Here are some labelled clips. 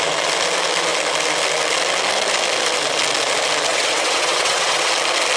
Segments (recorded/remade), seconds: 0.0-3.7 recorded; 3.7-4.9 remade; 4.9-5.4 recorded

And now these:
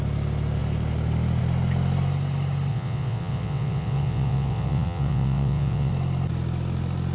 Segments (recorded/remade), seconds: 0.0-2.7 recorded; 2.7-5.9 remade; 5.9-7.1 recorded

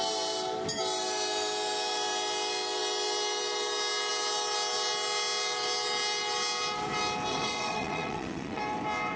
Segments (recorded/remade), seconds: 0.0-7.3 recorded; 7.3-8.6 remade; 8.6-9.2 recorded

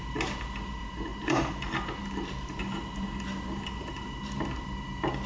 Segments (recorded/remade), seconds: 0.0-5.3 recorded

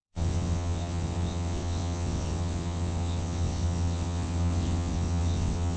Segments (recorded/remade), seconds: 0.0-5.8 remade